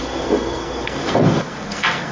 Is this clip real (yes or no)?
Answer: no